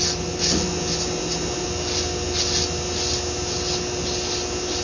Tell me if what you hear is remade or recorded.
recorded